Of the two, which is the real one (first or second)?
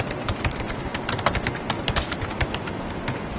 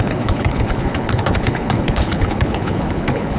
first